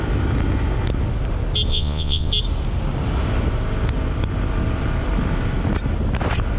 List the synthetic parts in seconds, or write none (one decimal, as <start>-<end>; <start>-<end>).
1.7-2.3